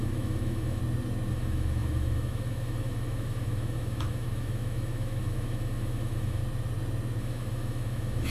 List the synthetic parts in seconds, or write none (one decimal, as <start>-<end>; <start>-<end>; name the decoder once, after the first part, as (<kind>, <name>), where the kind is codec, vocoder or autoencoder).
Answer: 0.0-0.8 (autoencoder, DAC-VAE); 1.3-6.4; 7.2-8.3